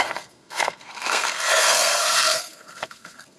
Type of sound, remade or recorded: remade